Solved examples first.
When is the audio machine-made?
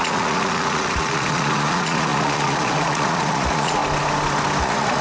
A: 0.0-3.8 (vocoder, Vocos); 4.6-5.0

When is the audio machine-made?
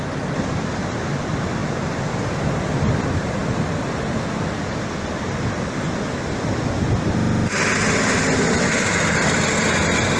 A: none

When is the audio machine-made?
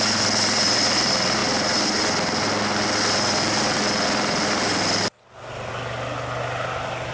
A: none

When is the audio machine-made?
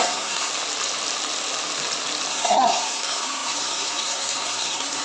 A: 0.0-0.5 (codec, SNAC); 2.3-5.0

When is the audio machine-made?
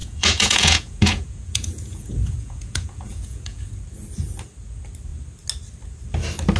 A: 0.0-3.7 (vocoder, Vocos)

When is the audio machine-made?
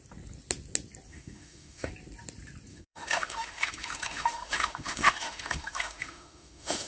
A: 1.1-1.9 (autoencoder, DAC-VAE); 2.7-6.9